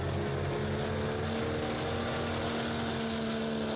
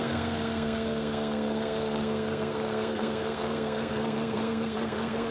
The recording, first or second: first